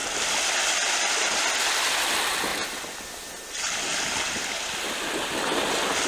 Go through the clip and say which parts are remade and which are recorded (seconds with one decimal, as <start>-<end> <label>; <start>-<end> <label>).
0.0-6.1 recorded